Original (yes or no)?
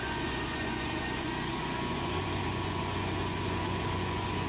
no